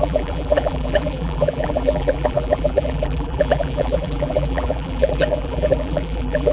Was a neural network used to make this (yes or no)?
yes